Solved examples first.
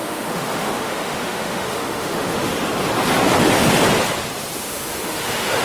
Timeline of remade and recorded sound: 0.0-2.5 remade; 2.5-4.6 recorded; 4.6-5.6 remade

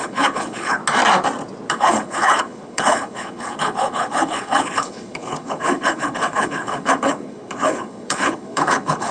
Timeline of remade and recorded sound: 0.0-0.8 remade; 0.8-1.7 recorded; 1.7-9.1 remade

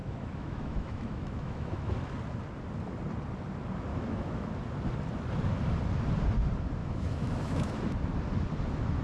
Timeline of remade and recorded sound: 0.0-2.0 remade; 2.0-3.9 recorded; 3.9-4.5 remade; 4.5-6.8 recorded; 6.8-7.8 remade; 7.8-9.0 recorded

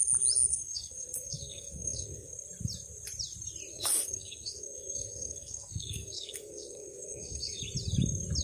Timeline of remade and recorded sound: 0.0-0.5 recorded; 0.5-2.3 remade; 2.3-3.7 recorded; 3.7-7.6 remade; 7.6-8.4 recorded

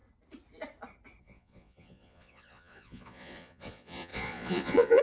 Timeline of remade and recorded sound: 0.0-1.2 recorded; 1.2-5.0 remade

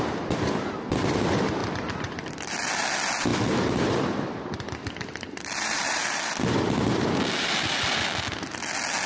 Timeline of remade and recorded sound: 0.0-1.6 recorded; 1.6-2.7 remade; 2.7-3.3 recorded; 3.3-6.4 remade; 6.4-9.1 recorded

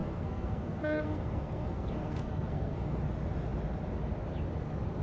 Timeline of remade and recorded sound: 0.0-3.0 remade; 3.0-5.0 recorded